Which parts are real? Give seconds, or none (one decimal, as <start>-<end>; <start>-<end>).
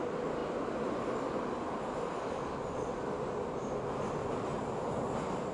0.0-5.5